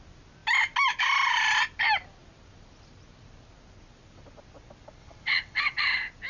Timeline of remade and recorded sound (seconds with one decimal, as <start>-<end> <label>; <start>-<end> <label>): 0.0-5.0 recorded; 5.0-5.8 remade; 5.8-6.3 recorded